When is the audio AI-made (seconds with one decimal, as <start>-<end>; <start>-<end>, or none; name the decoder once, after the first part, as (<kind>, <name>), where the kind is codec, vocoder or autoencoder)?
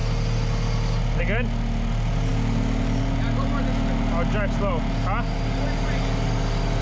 none